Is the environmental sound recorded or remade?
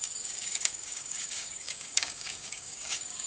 remade